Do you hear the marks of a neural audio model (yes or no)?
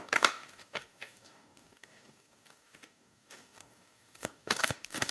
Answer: yes